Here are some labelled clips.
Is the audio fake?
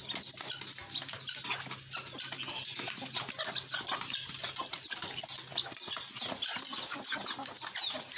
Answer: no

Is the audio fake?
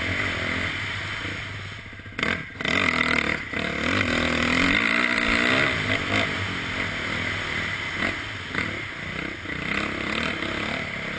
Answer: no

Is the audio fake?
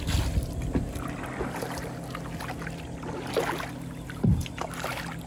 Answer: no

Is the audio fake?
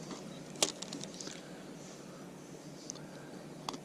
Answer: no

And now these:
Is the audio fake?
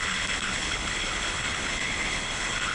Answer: yes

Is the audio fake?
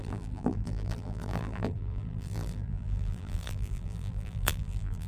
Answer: yes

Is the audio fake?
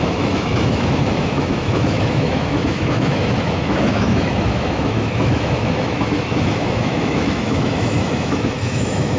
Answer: yes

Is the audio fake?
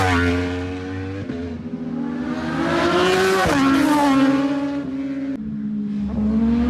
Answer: no